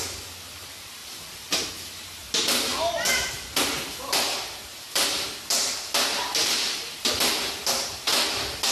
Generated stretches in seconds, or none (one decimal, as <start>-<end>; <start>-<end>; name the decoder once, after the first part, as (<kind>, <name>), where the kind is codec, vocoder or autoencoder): none